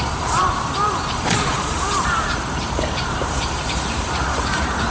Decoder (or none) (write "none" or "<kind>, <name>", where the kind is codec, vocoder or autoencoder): vocoder, BigVGAN v2